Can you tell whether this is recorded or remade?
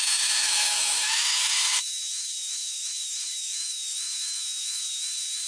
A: remade